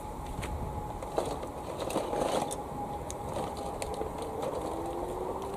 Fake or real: real